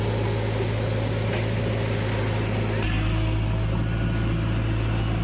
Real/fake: real